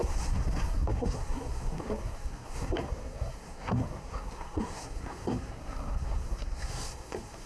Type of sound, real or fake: fake